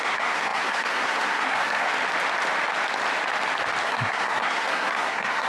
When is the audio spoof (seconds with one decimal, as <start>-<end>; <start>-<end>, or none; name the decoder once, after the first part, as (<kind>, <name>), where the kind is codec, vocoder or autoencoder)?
0.0-1.9 (codec, SNAC); 3.8-5.5